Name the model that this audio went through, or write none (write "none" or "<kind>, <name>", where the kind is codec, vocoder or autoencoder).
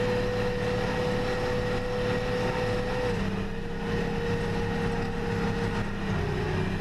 none